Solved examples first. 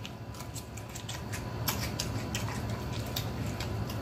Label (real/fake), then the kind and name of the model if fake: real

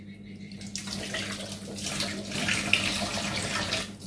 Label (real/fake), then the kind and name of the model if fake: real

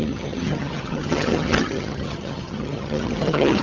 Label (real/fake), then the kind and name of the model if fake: fake, vocoder, HiFi-GAN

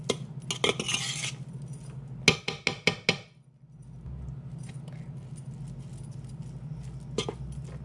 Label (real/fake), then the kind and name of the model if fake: real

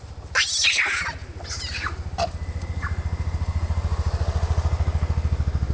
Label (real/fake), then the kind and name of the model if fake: real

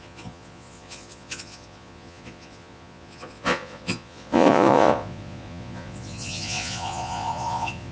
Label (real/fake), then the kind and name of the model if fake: fake, vocoder, Vocos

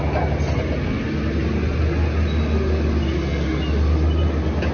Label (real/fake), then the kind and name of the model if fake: real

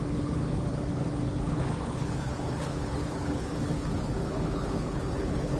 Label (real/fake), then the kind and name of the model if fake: fake, codec, HILCodec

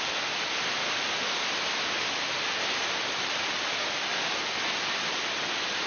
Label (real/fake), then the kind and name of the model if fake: real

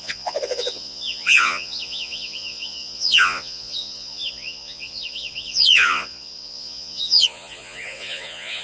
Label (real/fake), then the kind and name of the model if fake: fake, vocoder, Vocos